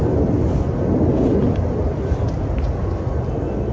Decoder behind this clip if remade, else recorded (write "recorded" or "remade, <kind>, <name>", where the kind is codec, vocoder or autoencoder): recorded